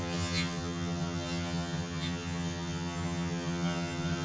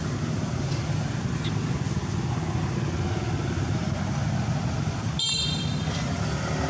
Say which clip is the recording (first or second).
second